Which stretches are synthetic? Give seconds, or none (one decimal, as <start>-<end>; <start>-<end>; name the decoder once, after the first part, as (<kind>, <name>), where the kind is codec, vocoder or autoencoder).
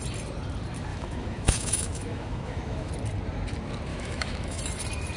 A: 0.9-2.9 (autoencoder, DAC-VAE); 3.9-4.6